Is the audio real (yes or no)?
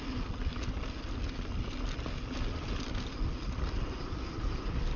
yes